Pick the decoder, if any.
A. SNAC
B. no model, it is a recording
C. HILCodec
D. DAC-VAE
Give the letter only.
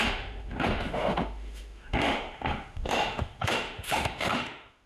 D